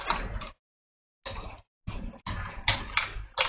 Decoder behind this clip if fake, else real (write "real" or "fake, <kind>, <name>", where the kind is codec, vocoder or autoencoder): real